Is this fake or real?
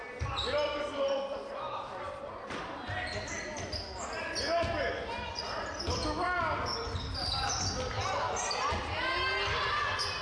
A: real